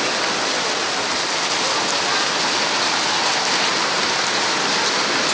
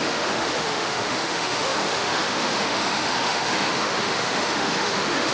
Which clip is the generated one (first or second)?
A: second